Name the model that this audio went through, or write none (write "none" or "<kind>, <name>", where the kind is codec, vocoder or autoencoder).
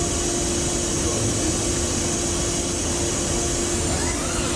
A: none